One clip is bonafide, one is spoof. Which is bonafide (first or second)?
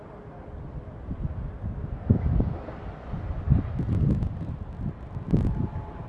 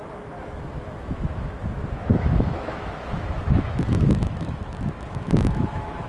first